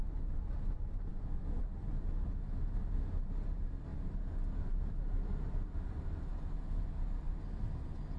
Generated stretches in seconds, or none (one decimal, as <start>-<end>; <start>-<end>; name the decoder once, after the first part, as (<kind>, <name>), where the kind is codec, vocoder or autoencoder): none